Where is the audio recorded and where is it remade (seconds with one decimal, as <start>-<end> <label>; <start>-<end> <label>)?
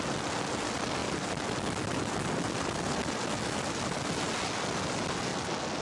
0.0-5.8 recorded